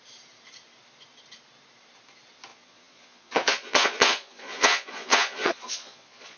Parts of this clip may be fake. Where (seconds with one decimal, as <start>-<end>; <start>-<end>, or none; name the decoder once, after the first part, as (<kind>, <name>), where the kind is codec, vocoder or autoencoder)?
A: 2.5-6.4 (vocoder, Vocos)